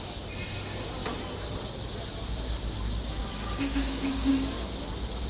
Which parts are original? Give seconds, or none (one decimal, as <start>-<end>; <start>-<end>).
0.0-3.2; 4.3-5.3